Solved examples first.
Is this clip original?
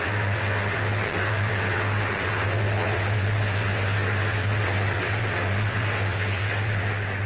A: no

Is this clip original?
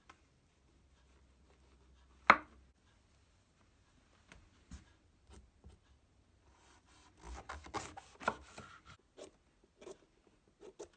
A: yes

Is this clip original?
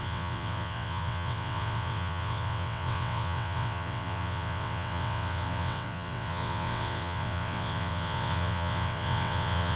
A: no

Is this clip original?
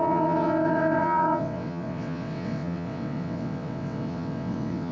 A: no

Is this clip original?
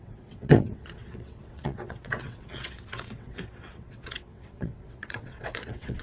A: no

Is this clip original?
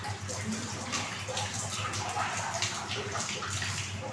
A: yes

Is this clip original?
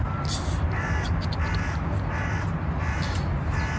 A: yes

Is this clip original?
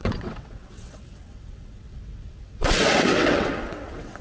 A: no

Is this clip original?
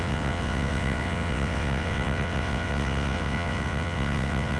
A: no